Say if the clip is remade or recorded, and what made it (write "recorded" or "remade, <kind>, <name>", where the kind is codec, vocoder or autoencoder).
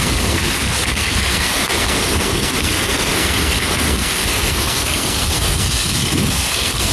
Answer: remade, codec, SNAC